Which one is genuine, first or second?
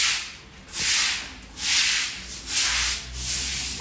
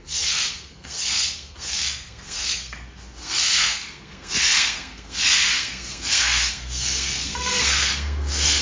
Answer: first